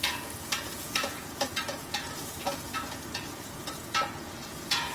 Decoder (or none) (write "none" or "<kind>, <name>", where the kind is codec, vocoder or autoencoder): vocoder, Vocos